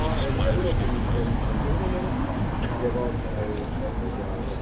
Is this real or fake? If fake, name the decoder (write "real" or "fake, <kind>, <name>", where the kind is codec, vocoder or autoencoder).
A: real